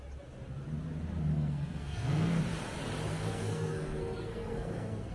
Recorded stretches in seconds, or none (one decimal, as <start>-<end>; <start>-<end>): 0.0-1.3; 2.4-3.1